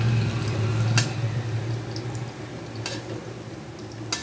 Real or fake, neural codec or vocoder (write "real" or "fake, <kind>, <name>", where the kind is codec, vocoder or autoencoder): real